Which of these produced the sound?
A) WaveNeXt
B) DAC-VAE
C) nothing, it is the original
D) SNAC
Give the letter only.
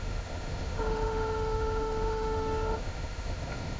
B